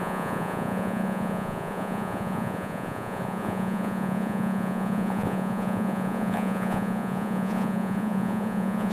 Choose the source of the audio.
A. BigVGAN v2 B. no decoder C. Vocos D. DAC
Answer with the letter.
C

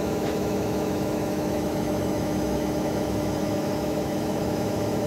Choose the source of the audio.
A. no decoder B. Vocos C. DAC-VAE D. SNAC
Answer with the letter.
C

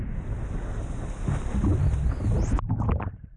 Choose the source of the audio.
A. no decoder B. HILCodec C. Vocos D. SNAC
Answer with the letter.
A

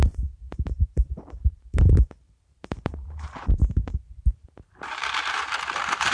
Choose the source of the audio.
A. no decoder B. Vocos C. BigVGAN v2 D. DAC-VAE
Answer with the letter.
C